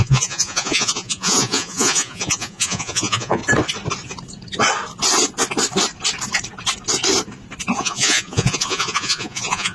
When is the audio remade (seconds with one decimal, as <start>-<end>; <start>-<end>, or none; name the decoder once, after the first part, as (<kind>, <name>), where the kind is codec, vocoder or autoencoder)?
0.0-3.4 (vocoder, Vocos); 7.8-9.7